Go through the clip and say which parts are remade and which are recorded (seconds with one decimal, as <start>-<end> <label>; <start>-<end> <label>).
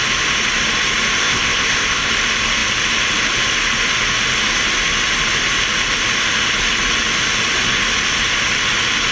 0.0-1.2 recorded; 1.2-2.1 remade; 2.1-9.1 recorded